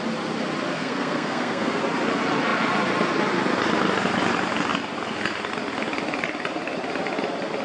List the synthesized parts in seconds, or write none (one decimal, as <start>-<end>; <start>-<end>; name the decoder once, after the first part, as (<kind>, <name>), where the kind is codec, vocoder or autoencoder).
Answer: 0.7-1.8 (codec, SNAC)